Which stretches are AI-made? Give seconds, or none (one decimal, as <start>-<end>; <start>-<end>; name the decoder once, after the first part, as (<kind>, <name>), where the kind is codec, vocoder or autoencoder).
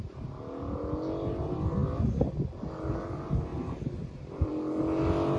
3.5-4.5 (vocoder, BigVGAN v2)